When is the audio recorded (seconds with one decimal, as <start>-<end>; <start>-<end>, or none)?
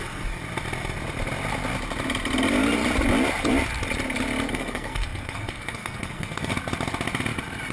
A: 0.4-4.5; 6.5-7.7